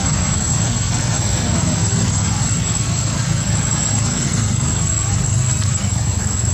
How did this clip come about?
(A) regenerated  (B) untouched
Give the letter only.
A